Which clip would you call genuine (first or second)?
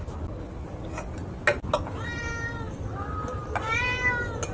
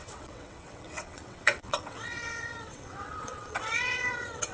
first